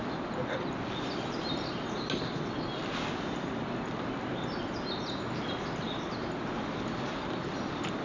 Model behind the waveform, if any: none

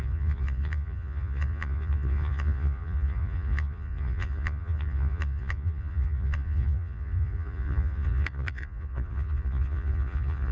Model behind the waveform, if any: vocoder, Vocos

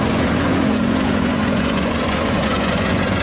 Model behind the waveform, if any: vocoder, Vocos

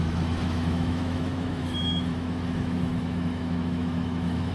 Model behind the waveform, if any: autoencoder, DAC-VAE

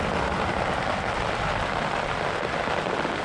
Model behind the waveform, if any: none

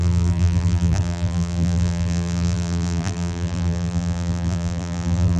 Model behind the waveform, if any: vocoder, BigVGAN v2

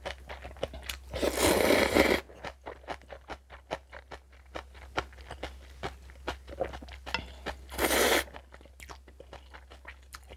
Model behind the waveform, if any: none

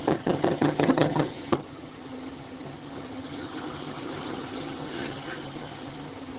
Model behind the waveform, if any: vocoder, HiFi-GAN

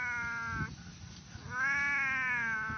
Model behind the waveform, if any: none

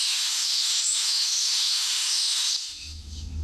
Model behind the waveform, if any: autoencoder, DAC-VAE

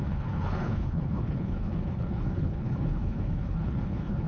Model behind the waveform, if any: codec, HILCodec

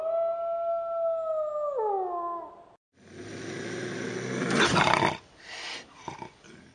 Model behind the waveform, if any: none